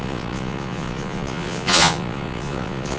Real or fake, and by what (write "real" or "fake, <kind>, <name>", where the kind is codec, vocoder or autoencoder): fake, vocoder, Vocos